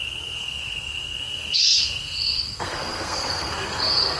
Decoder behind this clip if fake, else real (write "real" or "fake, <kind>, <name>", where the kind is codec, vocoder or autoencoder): fake, codec, SNAC